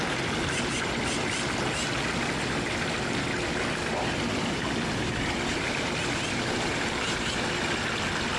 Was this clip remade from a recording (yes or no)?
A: no